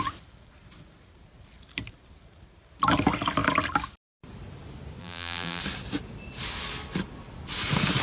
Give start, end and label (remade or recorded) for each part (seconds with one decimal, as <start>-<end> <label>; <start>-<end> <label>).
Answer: 0.0-5.0 recorded; 5.0-5.6 remade; 5.6-8.0 recorded